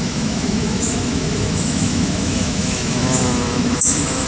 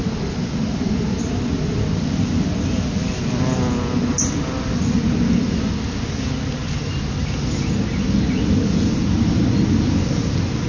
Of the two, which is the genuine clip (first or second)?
second